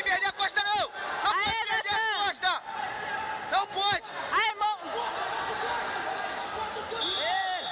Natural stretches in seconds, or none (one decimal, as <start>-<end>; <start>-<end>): 0.6-7.7